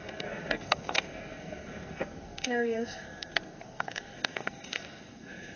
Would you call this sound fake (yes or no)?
yes